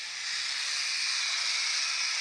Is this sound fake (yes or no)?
no